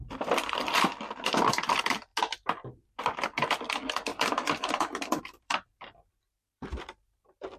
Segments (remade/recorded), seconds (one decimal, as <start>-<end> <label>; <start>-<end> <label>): 0.0-2.1 remade; 2.1-3.0 recorded; 3.0-7.6 remade

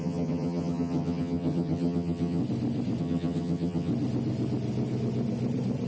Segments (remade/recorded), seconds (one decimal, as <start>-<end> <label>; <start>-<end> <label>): 0.0-2.4 remade; 2.4-3.0 recorded; 3.0-3.9 remade; 3.9-5.9 recorded

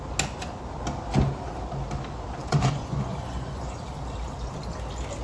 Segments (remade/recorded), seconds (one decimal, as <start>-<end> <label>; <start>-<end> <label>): 0.0-2.4 recorded; 2.4-3.8 remade; 3.8-5.2 recorded

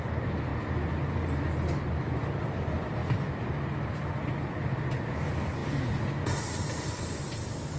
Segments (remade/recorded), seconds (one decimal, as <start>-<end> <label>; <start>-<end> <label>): 0.0-7.8 recorded

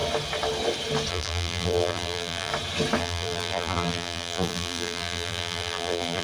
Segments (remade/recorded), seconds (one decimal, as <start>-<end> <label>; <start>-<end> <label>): 0.0-1.1 recorded; 1.1-2.5 remade; 2.5-3.0 recorded; 3.0-6.2 remade

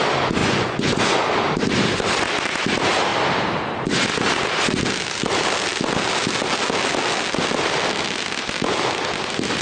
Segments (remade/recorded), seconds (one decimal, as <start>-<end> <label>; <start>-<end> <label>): 0.0-0.4 recorded; 0.4-1.2 remade; 1.2-9.6 recorded